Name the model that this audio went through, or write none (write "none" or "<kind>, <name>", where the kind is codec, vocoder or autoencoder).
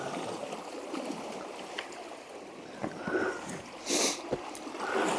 none